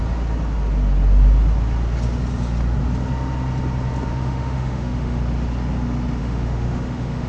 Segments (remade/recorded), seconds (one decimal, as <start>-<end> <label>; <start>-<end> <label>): 0.0-4.1 recorded; 4.1-5.2 remade; 5.2-6.2 recorded; 6.2-7.3 remade